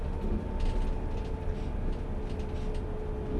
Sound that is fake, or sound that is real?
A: real